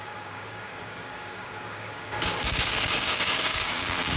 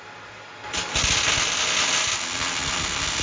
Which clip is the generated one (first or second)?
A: first